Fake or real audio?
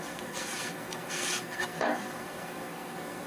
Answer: fake